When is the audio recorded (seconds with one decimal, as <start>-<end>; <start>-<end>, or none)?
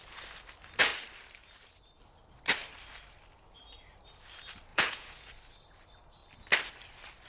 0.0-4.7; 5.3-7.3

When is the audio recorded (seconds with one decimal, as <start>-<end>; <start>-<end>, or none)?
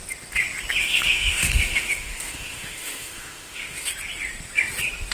0.0-0.8; 3.9-5.1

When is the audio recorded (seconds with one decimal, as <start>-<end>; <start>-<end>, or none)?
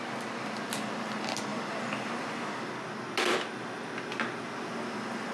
0.0-5.3